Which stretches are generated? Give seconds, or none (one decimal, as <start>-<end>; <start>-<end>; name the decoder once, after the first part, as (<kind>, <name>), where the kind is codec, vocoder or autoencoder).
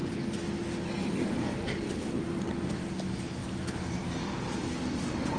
none